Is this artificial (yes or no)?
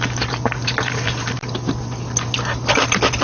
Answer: no